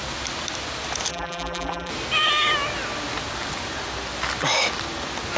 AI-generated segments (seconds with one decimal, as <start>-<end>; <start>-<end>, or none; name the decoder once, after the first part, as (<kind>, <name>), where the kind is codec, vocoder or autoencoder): 1.1-1.9 (vocoder, BigVGAN v2)